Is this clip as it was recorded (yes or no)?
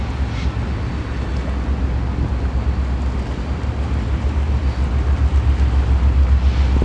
yes